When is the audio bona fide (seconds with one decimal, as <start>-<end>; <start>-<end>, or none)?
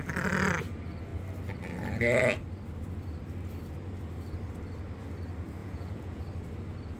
0.0-5.6; 6.2-7.0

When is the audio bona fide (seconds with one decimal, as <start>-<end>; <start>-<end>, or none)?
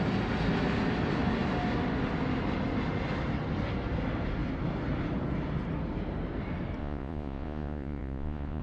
0.0-6.8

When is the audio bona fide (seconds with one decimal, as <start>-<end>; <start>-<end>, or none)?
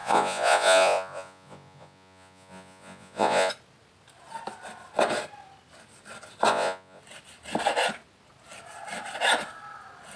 3.5-6.5; 7.0-10.2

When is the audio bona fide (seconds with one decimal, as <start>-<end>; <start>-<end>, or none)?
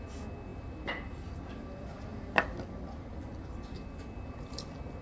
0.0-5.0